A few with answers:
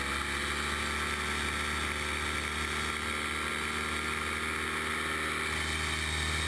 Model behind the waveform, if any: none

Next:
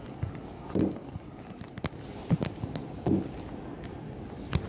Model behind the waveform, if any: none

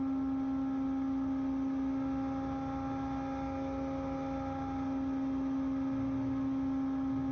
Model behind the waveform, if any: none